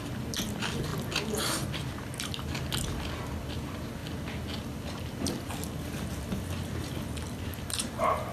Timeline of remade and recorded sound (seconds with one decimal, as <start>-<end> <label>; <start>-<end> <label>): 0.0-8.3 recorded